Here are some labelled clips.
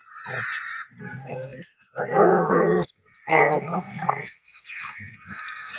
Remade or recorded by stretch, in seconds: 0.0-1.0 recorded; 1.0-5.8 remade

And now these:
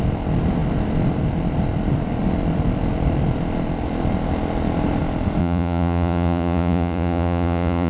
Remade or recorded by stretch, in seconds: 0.0-5.4 recorded; 5.4-7.9 remade

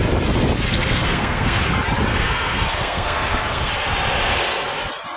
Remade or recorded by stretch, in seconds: 0.0-0.7 recorded; 0.7-1.6 remade; 1.6-2.1 recorded; 2.1-3.7 remade; 3.7-5.2 recorded

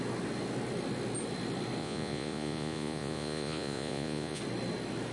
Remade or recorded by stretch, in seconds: 0.0-1.8 recorded; 1.8-4.4 remade; 4.4-5.1 recorded

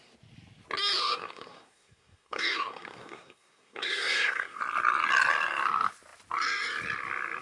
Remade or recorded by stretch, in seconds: 0.0-1.0 recorded; 1.0-4.6 remade; 4.6-7.4 recorded

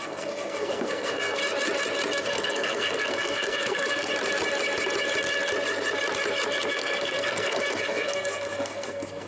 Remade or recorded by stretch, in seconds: 0.0-1.4 remade; 1.4-2.2 recorded; 2.2-4.1 remade; 4.1-6.7 recorded; 6.7-9.3 remade

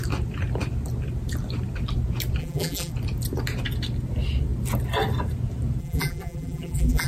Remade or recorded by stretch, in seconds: 0.0-2.4 recorded; 2.4-2.9 remade; 2.9-5.8 recorded; 5.8-7.1 remade